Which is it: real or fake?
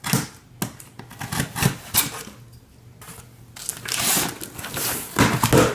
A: real